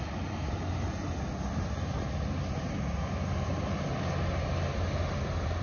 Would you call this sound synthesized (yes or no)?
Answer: no